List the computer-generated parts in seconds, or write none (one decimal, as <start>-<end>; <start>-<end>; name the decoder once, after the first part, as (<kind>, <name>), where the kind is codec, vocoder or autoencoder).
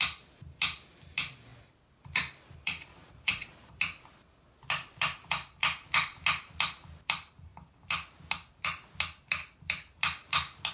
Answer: 2.9-3.8 (vocoder, Vocos)